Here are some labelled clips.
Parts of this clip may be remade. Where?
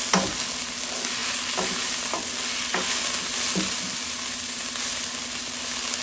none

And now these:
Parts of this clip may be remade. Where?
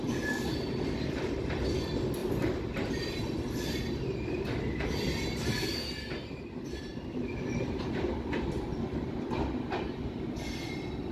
6.9-8.1 (vocoder, BigVGAN v2)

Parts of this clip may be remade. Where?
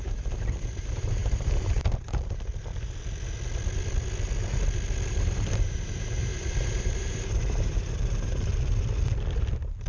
0.0-2.5 (vocoder, BigVGAN v2); 5.1-8.5; 9.3-9.9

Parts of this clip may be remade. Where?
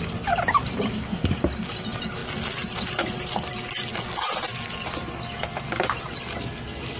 none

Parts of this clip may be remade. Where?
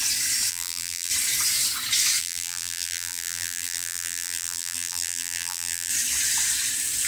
0.5-1.1 (vocoder, BigVGAN v2); 2.2-5.9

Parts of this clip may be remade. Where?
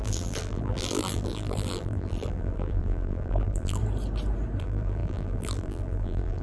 0.0-3.8 (vocoder, BigVGAN v2); 4.6-6.4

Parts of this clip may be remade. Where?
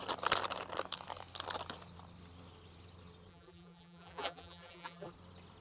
3.3-5.1 (vocoder, BigVGAN v2)